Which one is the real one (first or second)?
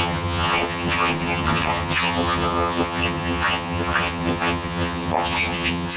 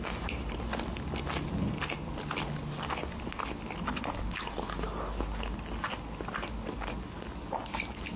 second